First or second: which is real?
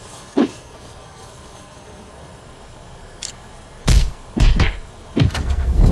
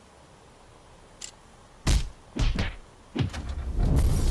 second